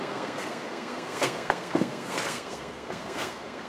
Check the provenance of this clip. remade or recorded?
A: remade